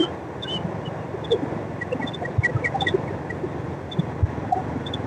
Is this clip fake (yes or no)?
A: no